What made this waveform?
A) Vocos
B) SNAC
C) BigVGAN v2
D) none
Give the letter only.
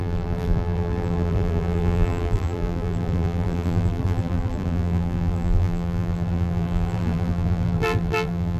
C